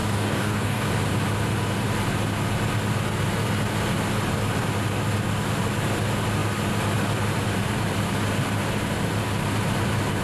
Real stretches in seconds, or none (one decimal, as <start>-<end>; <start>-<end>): 0.9-10.2